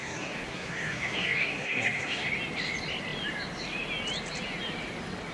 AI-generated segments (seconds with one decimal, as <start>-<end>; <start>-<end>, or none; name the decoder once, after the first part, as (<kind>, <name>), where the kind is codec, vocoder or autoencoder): 0.0-2.3 (codec, SNAC)